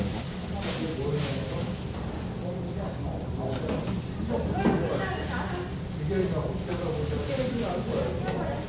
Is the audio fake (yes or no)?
no